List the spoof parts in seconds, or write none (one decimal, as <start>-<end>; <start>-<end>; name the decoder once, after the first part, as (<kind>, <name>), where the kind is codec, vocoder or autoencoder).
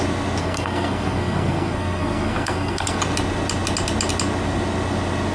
0.4-3.0 (codec, SNAC)